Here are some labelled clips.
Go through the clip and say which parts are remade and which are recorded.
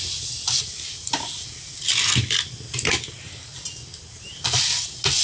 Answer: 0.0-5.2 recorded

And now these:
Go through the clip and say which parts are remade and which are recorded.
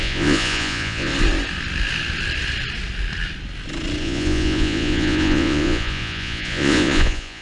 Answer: 0.0-1.1 remade; 1.1-4.0 recorded; 4.0-7.4 remade